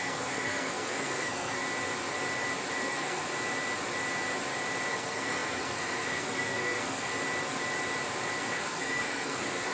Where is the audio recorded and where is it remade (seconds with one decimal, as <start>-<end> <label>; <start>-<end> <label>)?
0.0-1.6 remade; 1.6-2.8 recorded; 2.8-3.2 remade; 3.2-4.9 recorded; 4.9-7.1 remade; 7.1-8.4 recorded; 8.4-9.7 remade